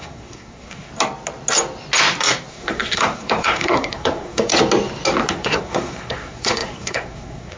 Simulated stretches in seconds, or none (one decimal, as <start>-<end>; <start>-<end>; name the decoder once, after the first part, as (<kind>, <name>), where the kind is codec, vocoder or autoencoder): 0.0-0.9 (codec, SNAC); 2.5-4.5; 5.3-7.6